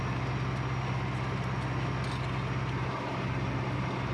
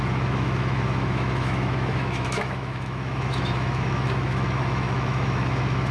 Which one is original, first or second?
first